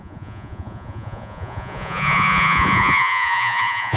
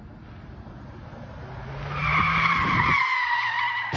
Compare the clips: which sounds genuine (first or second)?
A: second